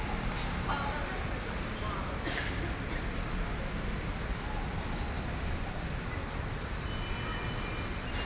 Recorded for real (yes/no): yes